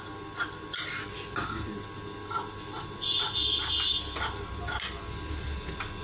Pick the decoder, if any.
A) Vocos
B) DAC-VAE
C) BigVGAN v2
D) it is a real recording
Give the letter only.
D